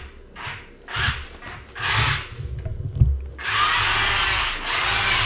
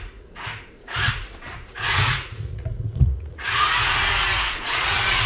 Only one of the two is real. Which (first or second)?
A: first